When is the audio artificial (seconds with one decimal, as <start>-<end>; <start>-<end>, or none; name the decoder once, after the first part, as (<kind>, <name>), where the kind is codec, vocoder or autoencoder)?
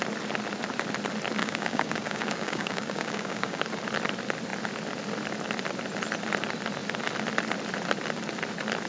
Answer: 1.4-3.6 (codec, DAC)